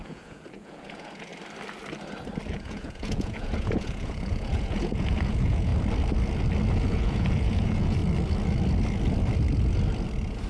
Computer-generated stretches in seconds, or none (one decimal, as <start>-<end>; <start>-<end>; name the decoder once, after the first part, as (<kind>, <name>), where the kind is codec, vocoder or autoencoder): 0.0-1.3 (vocoder, Vocos); 2.5-5.7; 6.7-8.0